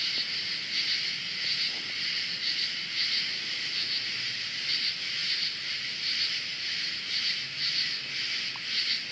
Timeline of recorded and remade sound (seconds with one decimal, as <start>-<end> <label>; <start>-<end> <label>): 0.0-3.8 recorded; 3.8-4.5 remade; 4.5-5.2 recorded; 5.2-6.6 remade; 6.6-9.1 recorded